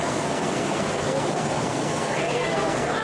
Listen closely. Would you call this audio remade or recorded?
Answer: remade